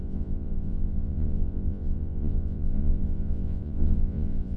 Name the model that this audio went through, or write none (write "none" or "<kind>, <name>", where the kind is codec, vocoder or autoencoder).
vocoder, Vocos